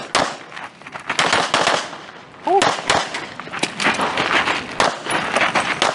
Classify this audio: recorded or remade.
recorded